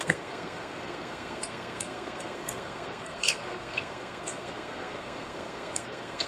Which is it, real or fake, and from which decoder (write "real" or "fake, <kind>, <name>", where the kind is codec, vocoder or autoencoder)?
fake, codec, SNAC